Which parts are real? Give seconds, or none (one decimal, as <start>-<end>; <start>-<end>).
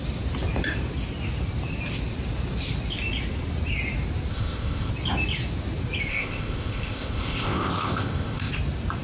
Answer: 0.0-4.3; 4.9-6.1; 8.5-9.0